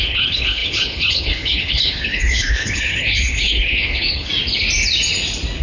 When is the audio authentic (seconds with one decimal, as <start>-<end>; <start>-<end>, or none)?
4.3-5.6